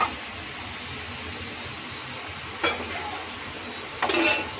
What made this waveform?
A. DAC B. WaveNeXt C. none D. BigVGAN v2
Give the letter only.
C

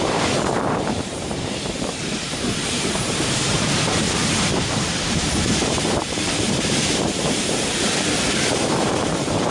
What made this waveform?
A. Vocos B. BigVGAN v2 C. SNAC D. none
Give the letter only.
B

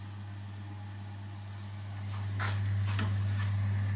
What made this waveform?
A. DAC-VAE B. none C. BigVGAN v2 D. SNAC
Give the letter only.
B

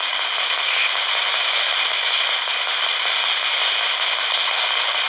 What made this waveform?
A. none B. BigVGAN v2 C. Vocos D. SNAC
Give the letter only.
A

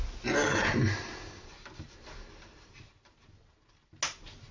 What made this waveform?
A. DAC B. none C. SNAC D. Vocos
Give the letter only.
B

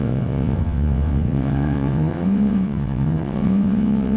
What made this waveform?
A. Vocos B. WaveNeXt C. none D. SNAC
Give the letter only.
B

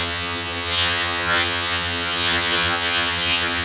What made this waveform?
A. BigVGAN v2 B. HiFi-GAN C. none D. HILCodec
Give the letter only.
B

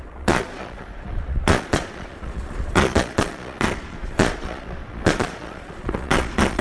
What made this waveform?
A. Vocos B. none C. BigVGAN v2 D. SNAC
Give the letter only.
A